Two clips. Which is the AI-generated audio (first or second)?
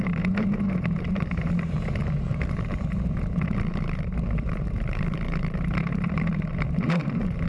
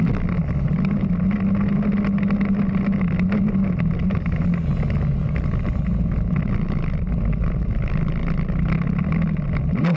first